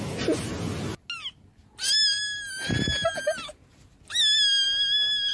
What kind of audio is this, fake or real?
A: real